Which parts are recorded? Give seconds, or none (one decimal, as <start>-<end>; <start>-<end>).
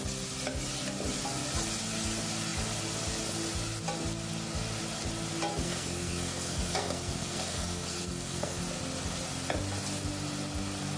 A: 0.0-5.5; 8.6-11.0